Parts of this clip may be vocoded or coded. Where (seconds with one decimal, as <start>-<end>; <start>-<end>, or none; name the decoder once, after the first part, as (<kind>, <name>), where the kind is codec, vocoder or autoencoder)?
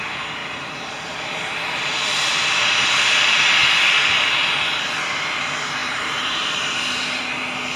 0.4-1.4 (vocoder, BigVGAN v2); 5.8-6.5